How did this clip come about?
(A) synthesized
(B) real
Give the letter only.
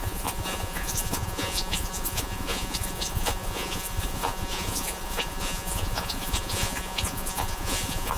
A